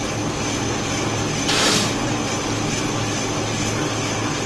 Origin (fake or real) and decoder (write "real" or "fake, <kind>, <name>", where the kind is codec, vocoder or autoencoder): real